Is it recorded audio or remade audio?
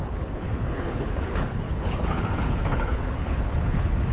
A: remade